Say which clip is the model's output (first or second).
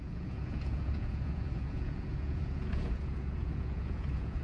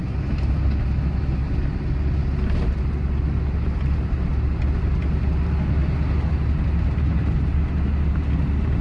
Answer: first